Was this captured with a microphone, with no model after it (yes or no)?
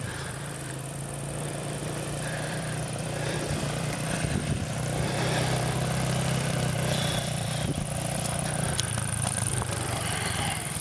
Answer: no